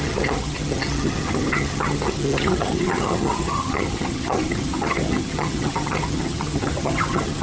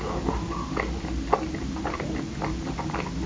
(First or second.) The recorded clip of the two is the second